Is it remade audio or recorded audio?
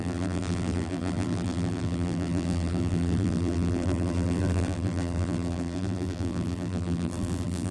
remade